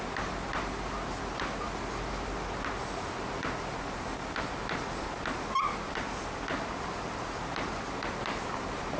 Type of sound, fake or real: real